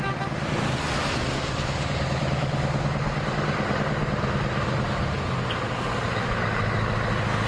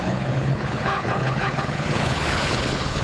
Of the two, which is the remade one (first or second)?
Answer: second